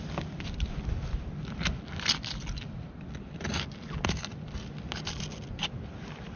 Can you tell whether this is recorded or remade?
recorded